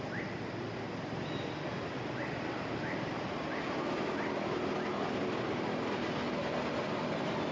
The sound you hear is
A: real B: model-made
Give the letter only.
A